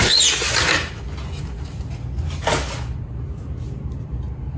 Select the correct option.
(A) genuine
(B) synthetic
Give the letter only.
A